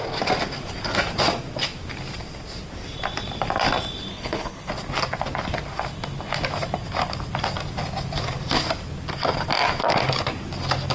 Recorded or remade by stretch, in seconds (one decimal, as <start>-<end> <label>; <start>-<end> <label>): 0.0-4.1 recorded; 4.1-4.7 remade; 4.7-10.9 recorded